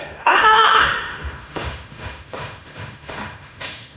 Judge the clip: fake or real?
fake